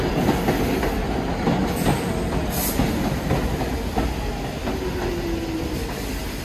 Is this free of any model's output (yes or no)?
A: yes